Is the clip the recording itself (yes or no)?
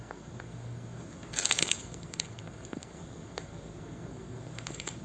no